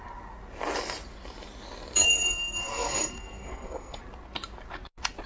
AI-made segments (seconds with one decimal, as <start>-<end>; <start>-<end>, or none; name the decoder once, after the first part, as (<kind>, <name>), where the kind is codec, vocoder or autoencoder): 2.0-4.0 (codec, SNAC)